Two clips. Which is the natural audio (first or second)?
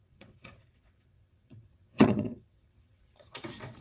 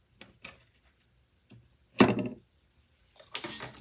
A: second